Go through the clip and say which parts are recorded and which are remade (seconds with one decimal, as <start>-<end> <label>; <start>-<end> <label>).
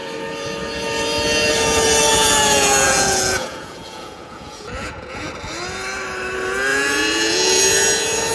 0.0-2.1 recorded; 2.1-5.3 remade; 5.3-6.7 recorded; 6.7-7.6 remade; 7.6-8.3 recorded